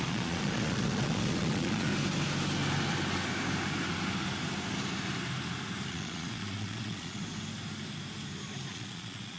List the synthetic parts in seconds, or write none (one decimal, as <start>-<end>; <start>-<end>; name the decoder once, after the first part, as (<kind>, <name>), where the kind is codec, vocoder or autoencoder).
0.0-1.9 (vocoder, Vocos); 5.9-7.2; 8.7-9.4